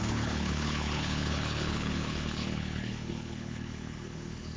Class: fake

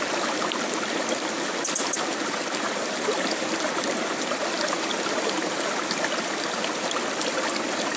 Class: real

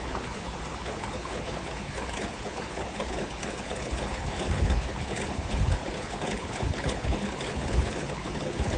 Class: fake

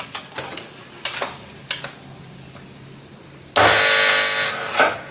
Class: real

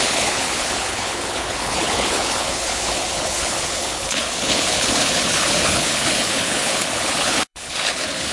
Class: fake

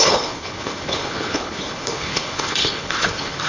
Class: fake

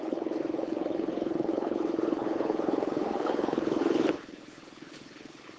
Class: fake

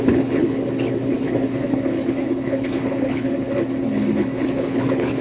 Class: fake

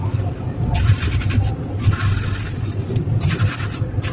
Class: real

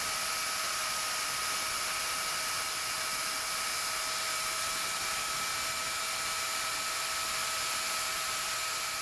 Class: real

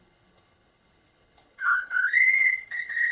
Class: fake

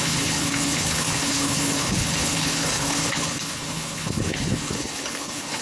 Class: fake